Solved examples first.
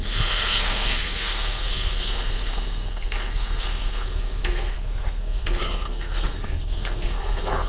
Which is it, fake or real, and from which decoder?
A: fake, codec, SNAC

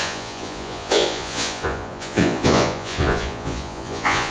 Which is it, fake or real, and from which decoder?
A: fake, vocoder, Vocos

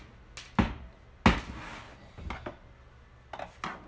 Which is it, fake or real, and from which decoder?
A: real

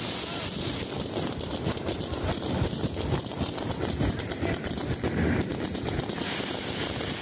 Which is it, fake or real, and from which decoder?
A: real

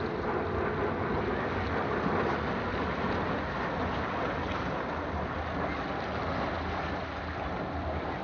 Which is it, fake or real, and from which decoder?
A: real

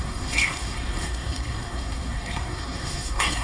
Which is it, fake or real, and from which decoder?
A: fake, codec, SNAC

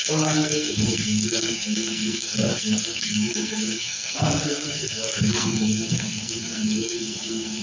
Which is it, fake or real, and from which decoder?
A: fake, codec, SNAC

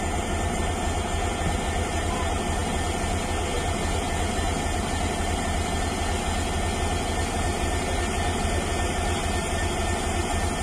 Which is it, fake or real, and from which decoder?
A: real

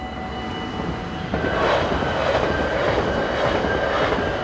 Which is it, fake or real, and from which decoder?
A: real